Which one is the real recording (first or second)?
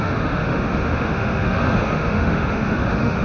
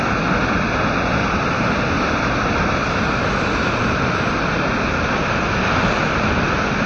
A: second